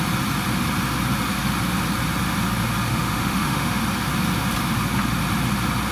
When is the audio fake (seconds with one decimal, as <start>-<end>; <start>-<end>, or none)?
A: 2.9-3.8